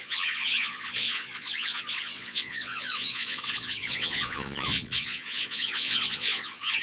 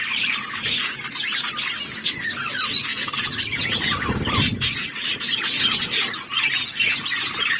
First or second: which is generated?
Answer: first